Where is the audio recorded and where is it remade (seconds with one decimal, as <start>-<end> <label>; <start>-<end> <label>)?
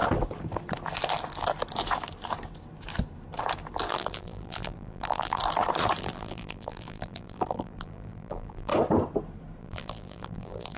0.0-3.9 recorded; 3.9-5.4 remade; 5.4-6.0 recorded; 6.0-8.7 remade; 8.7-9.6 recorded; 9.6-10.8 remade